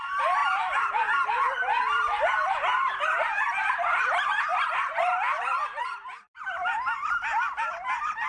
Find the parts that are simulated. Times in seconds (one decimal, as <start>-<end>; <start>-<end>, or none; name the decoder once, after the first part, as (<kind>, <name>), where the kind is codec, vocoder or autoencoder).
0.0-0.4 (vocoder, BigVGAN v2); 1.4-8.3